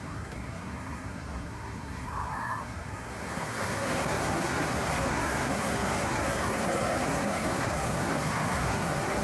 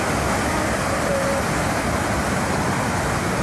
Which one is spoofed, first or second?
first